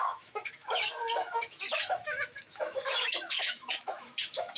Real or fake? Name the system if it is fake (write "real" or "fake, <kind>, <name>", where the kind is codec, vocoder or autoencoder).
fake, autoencoder, DAC-VAE